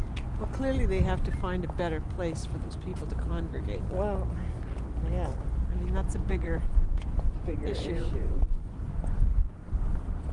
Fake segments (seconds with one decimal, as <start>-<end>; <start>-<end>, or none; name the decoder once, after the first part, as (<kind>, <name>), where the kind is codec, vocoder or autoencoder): 6.3-9.2 (vocoder, Vocos)